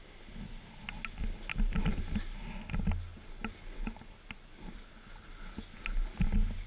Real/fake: real